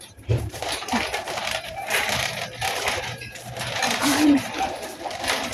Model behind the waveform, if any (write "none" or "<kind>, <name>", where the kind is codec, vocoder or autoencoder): vocoder, BigVGAN v2